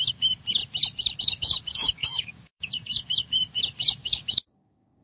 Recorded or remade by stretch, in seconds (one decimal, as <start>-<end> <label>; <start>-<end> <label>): 0.0-0.6 remade; 0.6-1.2 recorded; 1.2-5.0 remade